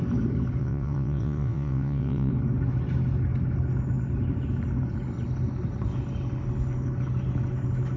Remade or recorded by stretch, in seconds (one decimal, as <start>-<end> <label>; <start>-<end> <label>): 0.0-0.6 recorded; 0.6-2.3 remade; 2.3-8.0 recorded